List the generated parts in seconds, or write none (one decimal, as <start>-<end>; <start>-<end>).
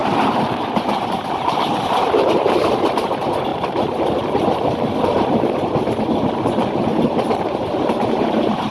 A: 0.0-3.5; 5.0-6.9; 7.9-8.7